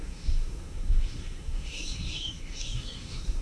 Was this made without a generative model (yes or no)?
no